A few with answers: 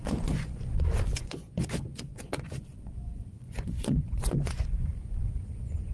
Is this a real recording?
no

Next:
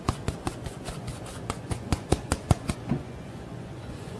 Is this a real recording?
no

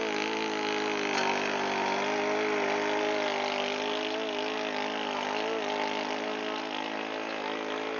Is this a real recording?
yes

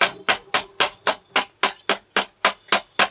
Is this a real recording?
yes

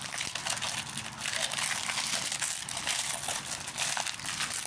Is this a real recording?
yes